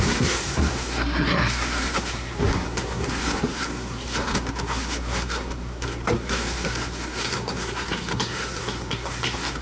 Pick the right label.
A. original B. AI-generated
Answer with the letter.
B